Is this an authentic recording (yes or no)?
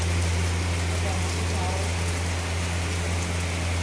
yes